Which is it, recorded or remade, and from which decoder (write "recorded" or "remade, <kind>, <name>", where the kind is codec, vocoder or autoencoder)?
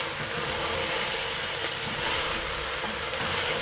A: recorded